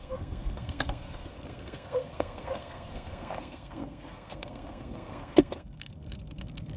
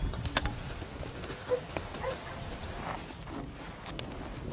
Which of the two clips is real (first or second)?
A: second